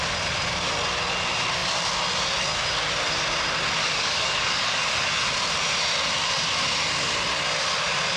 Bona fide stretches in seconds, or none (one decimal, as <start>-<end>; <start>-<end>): 0.0-3.8; 5.2-8.2